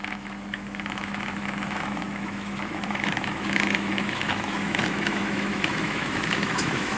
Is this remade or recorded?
remade